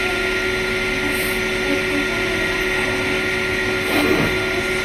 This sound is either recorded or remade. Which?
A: recorded